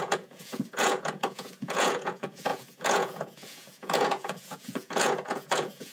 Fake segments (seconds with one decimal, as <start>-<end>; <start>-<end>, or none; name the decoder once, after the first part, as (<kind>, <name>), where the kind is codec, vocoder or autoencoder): 0.0-5.9 (vocoder, Vocos)